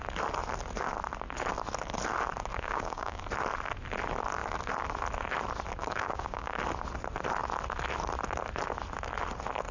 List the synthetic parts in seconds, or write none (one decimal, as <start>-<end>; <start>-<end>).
2.5-3.2; 5.8-6.6